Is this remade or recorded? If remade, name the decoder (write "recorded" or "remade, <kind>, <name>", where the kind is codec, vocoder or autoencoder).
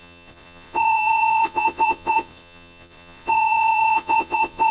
remade, vocoder, Vocos